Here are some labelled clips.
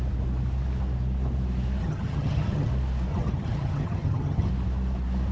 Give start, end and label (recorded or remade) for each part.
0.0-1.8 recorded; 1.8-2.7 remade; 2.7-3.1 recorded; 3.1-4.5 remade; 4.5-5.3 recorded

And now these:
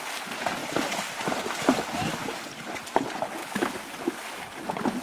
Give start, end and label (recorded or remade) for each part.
0.0-3.4 recorded; 3.4-4.0 remade; 4.0-5.0 recorded

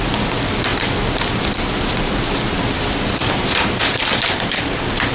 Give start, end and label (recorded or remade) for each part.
0.0-3.2 recorded; 3.2-4.1 remade; 4.1-5.1 recorded

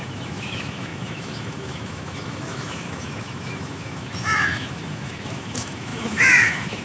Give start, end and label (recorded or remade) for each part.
0.0-6.8 remade

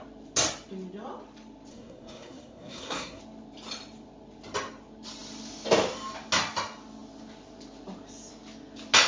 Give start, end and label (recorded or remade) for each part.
0.0-1.7 recorded; 1.7-3.2 remade; 3.2-9.1 recorded

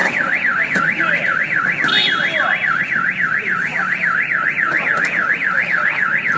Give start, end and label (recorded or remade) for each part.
0.0-1.0 remade; 1.0-6.4 recorded

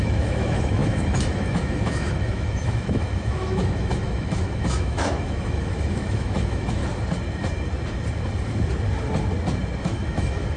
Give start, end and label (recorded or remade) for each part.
0.0-6.8 remade; 6.8-9.8 recorded; 9.8-10.6 remade

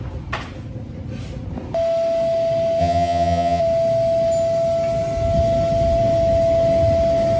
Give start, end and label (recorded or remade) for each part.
0.0-2.8 recorded; 2.8-3.6 remade; 3.6-7.4 recorded